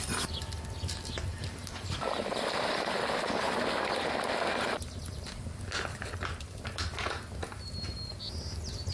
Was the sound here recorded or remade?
recorded